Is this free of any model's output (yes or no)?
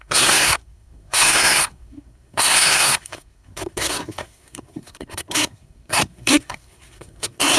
no